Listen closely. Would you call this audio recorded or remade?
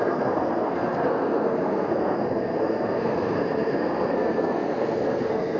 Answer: remade